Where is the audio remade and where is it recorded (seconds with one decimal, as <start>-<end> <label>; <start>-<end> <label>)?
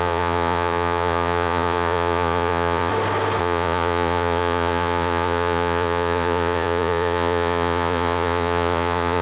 0.0-2.9 remade; 2.9-3.4 recorded; 3.4-9.2 remade